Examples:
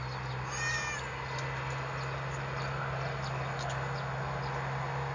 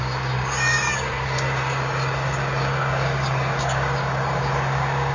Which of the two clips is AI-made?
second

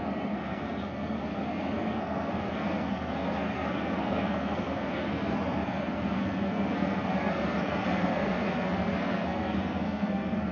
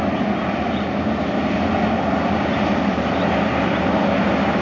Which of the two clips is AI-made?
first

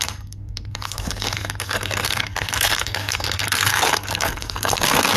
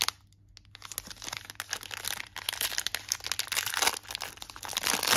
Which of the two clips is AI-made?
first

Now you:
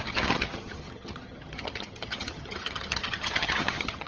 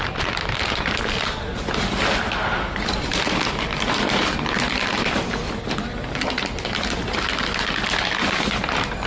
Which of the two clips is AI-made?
first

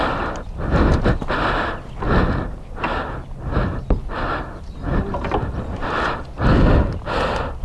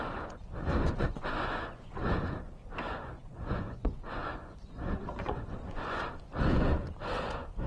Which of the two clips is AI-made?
second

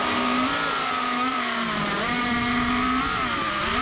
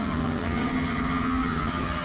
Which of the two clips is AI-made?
second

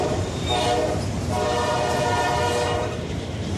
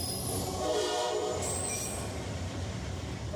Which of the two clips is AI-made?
first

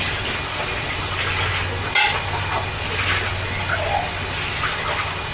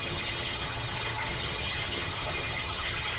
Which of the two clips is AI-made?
second